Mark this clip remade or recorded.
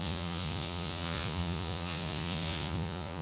remade